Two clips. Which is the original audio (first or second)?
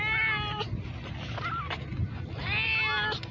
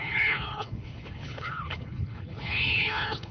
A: first